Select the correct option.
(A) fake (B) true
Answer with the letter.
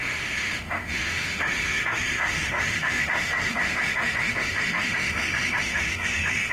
A